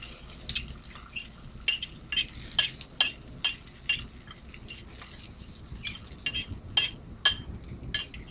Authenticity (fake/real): real